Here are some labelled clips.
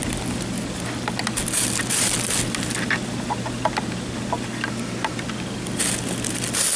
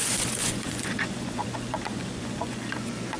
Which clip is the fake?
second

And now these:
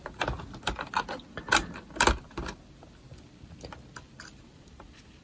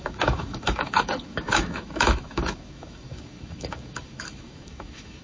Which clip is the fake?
second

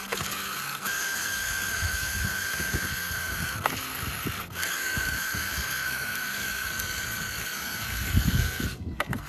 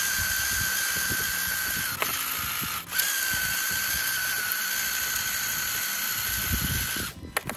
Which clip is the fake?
first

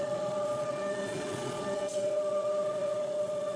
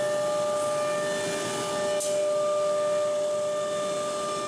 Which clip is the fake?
first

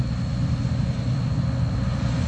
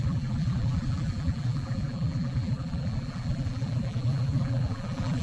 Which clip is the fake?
second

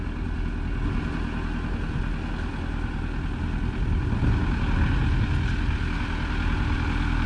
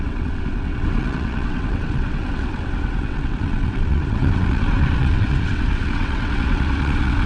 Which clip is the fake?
second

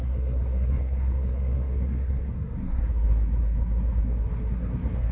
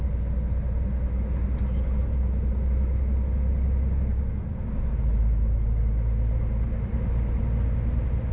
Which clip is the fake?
first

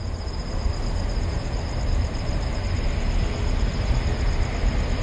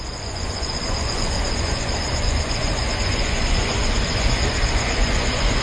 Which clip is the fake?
second